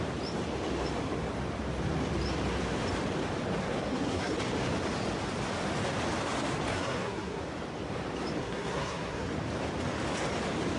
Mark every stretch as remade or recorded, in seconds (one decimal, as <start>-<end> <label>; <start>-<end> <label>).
0.0-3.6 recorded; 3.6-4.3 remade; 4.3-6.7 recorded; 6.7-7.4 remade; 7.4-8.4 recorded; 8.4-9.3 remade; 9.3-10.8 recorded